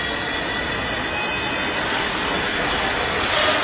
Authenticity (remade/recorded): recorded